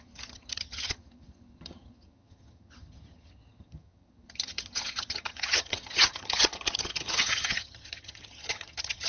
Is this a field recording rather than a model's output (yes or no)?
no